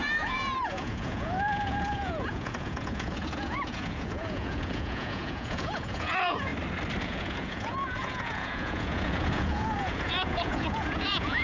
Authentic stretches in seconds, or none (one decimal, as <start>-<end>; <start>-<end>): 6.5-7.0